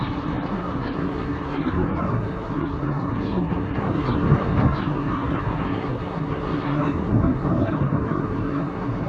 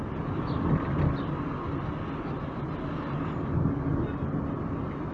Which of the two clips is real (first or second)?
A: second